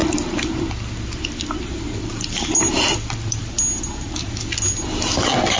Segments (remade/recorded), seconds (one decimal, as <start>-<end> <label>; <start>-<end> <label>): 0.0-5.6 recorded